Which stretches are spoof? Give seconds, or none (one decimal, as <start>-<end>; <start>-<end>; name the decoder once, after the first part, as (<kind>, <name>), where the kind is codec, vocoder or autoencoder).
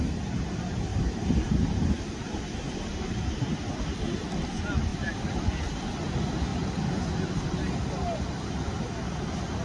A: 0.9-2.4 (vocoder, BigVGAN v2); 2.9-3.6; 4.9-5.4